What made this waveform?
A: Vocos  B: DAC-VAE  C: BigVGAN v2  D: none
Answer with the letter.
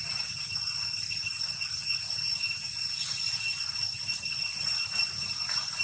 D